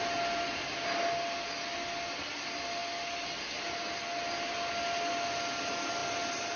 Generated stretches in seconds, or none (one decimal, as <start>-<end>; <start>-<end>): none